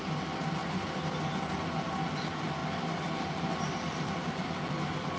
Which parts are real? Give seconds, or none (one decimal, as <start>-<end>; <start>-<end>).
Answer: 0.0-0.6; 1.2-5.2